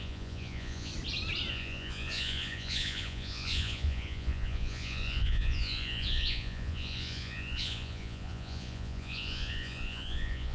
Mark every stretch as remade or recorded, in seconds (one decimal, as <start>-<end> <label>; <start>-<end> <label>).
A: 0.0-0.9 remade; 0.9-1.5 recorded; 1.5-10.5 remade